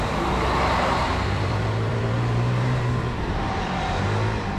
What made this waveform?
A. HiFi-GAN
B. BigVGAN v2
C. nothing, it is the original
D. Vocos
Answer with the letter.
B